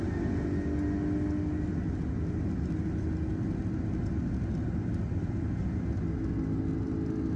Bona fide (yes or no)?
yes